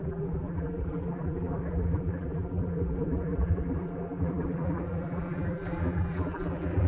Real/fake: fake